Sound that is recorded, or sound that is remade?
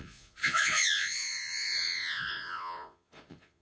remade